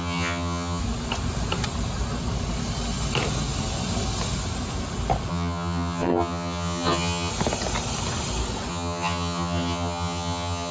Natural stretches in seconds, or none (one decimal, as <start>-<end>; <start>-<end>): 0.8-5.3; 7.3-8.7